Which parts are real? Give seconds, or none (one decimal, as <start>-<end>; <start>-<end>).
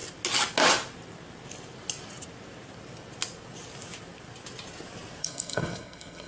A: 0.0-5.2